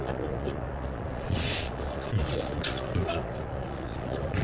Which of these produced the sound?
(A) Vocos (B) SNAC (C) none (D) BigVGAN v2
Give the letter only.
A